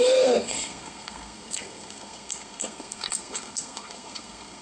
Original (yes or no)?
no